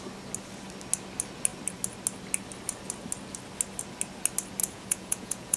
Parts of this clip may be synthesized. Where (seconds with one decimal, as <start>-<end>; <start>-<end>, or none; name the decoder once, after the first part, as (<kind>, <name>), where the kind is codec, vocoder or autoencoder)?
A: 4.6-5.6 (vocoder, Vocos)